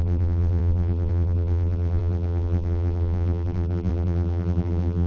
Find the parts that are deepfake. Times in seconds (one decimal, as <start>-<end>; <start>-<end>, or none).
0.0-5.1